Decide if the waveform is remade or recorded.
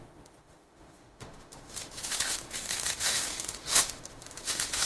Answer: remade